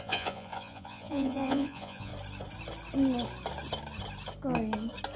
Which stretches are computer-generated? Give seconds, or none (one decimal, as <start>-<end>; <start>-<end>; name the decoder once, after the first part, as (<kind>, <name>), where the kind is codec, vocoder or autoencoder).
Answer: 0.0-2.1 (vocoder, Vocos)